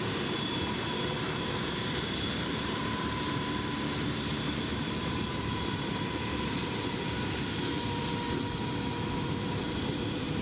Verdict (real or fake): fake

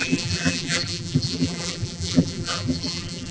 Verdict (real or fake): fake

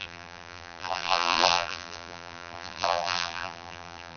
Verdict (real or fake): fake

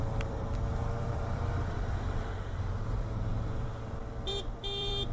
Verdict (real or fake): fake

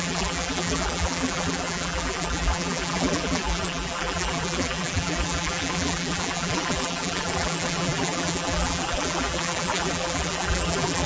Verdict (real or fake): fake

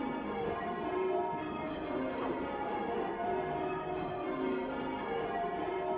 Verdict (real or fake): fake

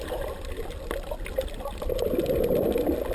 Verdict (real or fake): real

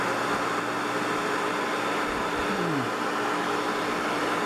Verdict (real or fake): real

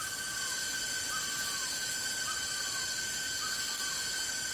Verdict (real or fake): real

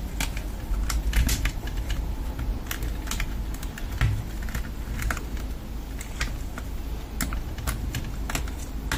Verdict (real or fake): real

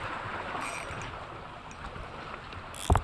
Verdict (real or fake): real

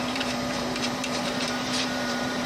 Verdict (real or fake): fake